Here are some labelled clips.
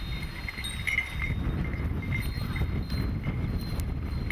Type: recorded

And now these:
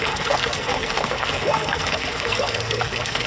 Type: remade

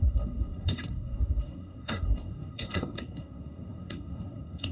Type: remade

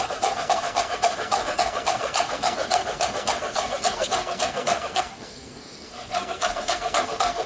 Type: remade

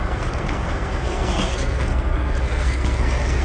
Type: remade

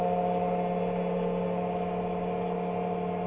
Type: recorded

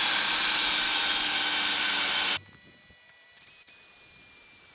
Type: recorded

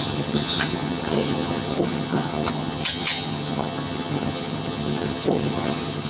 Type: remade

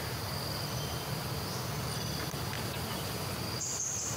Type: recorded